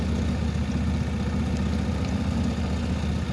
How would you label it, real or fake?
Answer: real